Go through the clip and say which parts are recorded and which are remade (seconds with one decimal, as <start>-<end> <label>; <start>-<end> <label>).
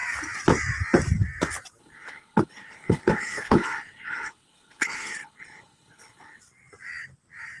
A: 0.0-1.8 recorded; 1.8-6.4 remade; 6.4-7.6 recorded